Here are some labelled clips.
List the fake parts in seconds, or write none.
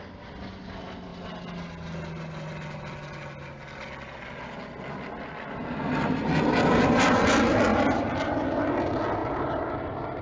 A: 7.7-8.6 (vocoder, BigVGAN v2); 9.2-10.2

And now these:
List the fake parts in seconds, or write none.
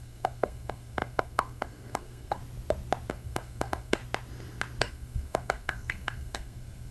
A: 0.0-2.4 (codec, SNAC); 3.1-4.0; 4.8-6.9